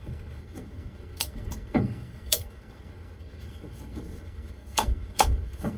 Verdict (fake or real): fake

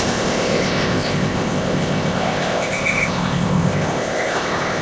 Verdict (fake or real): fake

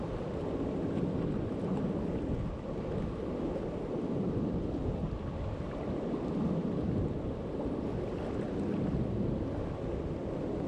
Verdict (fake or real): real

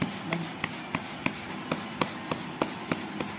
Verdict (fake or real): real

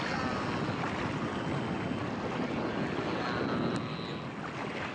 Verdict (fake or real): real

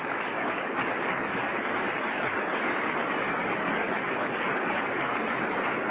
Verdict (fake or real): fake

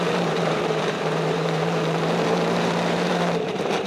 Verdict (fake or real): fake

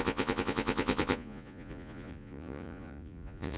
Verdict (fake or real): fake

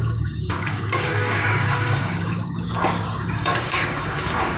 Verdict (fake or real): fake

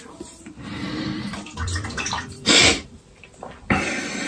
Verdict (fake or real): fake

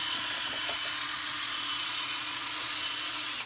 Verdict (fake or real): fake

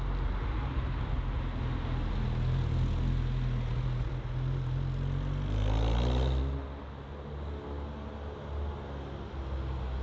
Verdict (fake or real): real